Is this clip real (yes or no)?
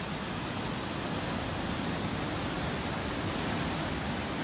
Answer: yes